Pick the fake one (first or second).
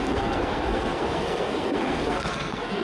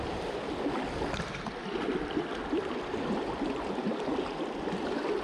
first